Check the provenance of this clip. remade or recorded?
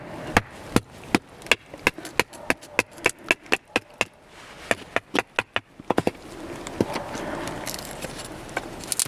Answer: recorded